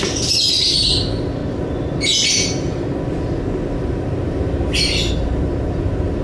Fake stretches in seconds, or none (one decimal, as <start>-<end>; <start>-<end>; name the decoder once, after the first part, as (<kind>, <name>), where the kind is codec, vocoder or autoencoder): none